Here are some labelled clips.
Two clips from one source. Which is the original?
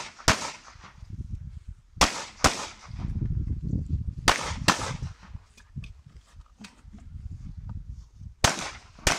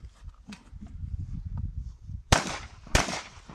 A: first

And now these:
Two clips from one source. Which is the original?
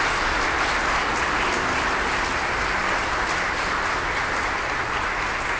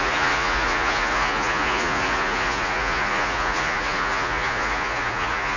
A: first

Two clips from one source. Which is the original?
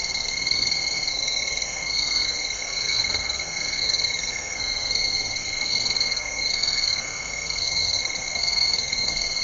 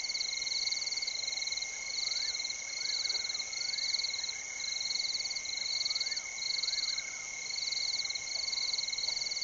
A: second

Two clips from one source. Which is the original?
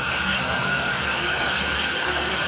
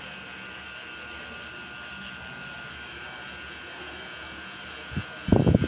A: second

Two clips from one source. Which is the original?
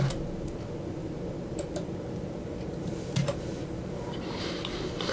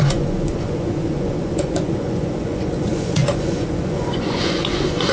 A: first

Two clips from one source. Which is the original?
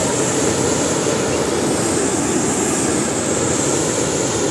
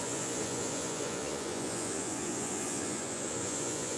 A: first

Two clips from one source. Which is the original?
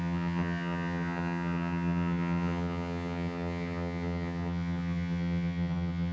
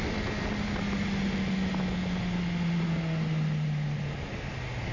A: second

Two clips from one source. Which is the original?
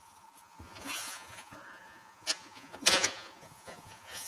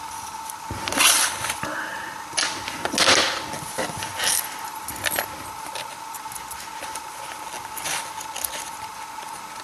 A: second